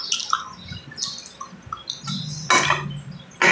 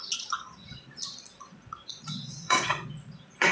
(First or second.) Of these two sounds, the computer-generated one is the second